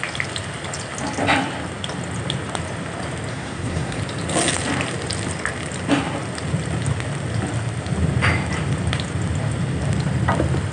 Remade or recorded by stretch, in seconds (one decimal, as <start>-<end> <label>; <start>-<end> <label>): 0.0-3.3 recorded; 3.3-4.0 remade; 4.0-10.7 recorded